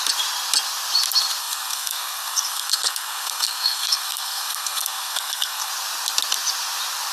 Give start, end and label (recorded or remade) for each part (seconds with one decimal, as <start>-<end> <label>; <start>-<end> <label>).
0.0-1.4 recorded; 1.4-5.7 remade; 5.7-7.1 recorded